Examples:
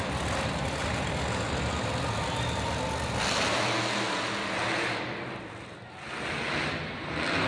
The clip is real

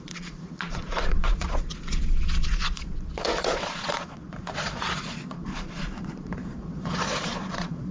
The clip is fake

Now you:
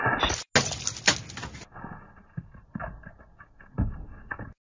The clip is real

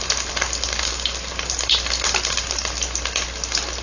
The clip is real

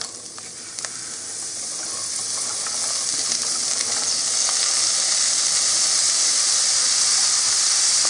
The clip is real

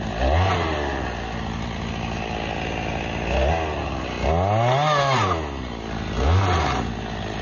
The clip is real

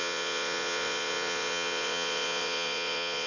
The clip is fake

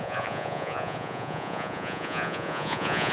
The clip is fake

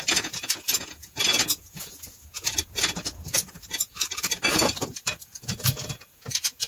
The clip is fake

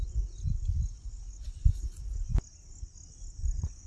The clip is real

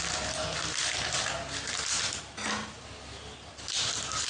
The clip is real